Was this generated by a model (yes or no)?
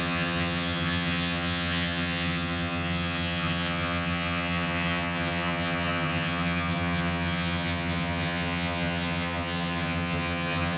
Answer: yes